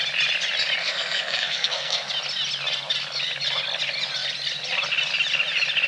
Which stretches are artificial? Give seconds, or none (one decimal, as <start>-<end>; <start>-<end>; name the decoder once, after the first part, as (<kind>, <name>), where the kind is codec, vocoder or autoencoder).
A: 0.8-2.1 (codec, SNAC)

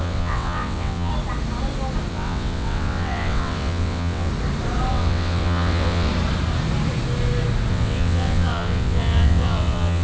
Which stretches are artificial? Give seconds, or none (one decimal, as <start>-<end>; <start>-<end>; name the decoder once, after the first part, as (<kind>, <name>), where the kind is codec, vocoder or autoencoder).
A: 0.0-1.1 (vocoder, WaveNeXt); 2.1-4.3; 4.9-6.1; 7.7-10.0